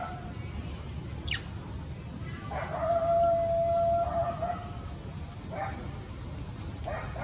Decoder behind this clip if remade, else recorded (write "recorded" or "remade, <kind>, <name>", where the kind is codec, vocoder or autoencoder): recorded